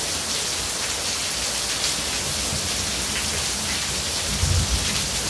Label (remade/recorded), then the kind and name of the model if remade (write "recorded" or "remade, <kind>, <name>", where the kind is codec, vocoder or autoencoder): recorded